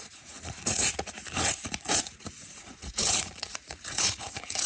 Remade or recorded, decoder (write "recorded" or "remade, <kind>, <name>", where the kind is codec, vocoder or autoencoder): remade, vocoder, Vocos